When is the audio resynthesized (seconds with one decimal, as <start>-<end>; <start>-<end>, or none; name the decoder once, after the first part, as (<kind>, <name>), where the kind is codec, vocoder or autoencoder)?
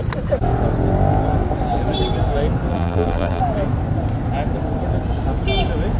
2.7-3.4 (vocoder, BigVGAN v2)